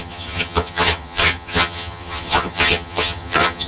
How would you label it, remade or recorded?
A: remade